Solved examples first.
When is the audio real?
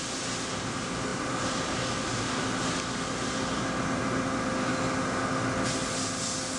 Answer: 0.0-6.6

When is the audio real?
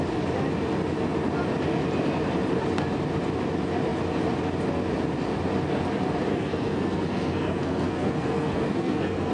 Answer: 0.0-6.3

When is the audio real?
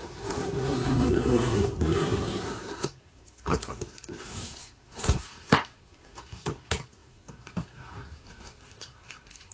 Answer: none